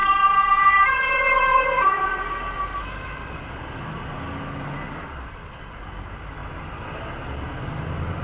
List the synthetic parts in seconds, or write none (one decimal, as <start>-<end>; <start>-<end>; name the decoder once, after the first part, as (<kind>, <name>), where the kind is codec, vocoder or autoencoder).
none